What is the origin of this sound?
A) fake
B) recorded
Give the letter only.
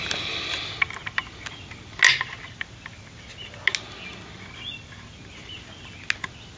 B